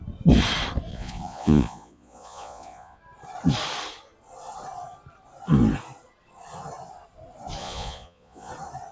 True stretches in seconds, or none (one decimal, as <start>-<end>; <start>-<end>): 0.0-0.9; 3.0-7.6; 8.5-8.9